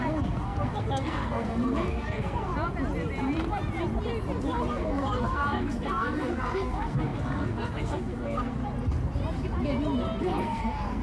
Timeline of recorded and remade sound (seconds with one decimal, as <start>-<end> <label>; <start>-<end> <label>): 0.0-2.5 remade; 2.5-4.7 recorded; 4.7-8.6 remade; 8.6-10.2 recorded; 10.2-11.0 remade